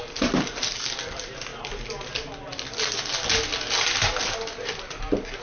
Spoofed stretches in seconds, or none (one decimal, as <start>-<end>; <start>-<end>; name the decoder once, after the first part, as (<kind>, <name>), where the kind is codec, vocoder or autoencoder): none